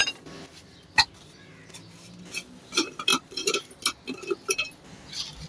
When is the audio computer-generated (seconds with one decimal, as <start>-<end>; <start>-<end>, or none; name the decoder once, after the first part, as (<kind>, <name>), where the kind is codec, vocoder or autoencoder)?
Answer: 0.0-1.5 (vocoder, BigVGAN v2); 3.1-3.7